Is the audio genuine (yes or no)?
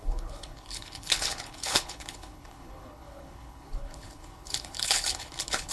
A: no